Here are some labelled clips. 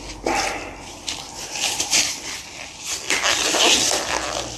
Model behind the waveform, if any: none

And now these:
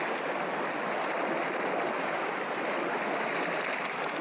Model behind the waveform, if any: none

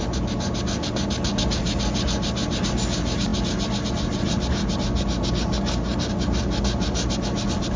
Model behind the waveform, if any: none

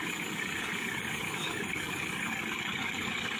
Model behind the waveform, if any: codec, DAC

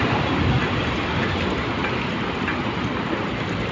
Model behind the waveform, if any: none